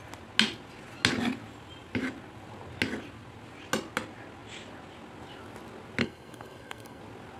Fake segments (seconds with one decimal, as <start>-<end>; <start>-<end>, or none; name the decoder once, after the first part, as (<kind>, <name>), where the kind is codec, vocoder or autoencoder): 6.0-7.0 (codec, SNAC)

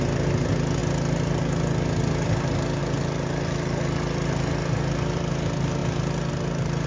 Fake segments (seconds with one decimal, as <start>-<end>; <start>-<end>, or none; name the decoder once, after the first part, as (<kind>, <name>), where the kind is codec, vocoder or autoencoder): none

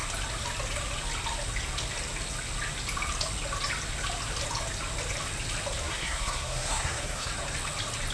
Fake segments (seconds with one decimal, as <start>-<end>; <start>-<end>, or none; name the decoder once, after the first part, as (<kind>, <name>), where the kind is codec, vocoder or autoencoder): 5.8-7.3 (codec, SNAC)

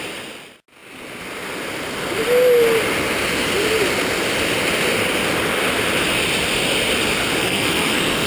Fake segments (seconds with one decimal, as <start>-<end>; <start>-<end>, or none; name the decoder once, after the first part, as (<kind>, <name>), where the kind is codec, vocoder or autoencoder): 7.4-8.3 (codec, SNAC)